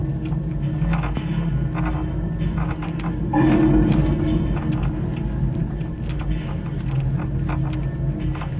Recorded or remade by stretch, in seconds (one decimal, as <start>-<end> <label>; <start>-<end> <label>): 0.0-8.6 recorded

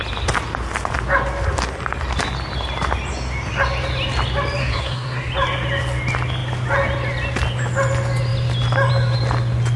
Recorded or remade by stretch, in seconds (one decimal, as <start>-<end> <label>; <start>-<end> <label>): 0.0-4.6 recorded; 4.6-5.3 remade; 5.3-9.8 recorded

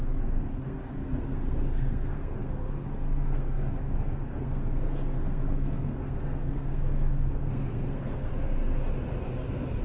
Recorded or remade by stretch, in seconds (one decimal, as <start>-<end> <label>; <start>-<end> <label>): 0.0-8.3 remade; 8.3-9.8 recorded

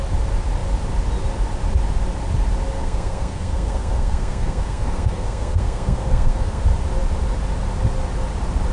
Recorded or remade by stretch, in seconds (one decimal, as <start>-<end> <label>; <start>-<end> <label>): 0.0-2.8 recorded; 2.8-6.6 remade; 6.6-8.7 recorded

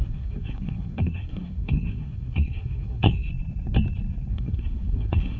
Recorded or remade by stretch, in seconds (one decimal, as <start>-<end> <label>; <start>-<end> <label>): 0.0-3.3 remade; 3.3-4.3 recorded; 4.3-5.4 remade

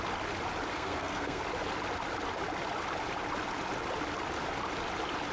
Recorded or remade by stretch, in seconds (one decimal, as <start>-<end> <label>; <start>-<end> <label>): 0.0-0.7 recorded; 0.7-1.4 remade; 1.4-5.3 recorded